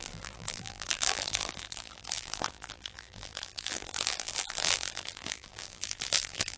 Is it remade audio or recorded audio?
remade